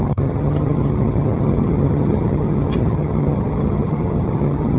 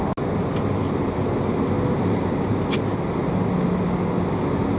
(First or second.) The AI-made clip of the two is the first